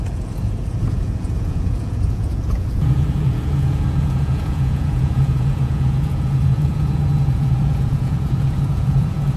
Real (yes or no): no